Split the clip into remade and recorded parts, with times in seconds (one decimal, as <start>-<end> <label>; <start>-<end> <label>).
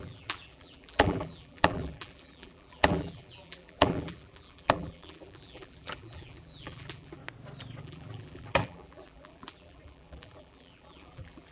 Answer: 0.0-7.2 remade; 7.2-7.8 recorded; 7.8-11.5 remade